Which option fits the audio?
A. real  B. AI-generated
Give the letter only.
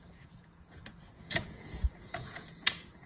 B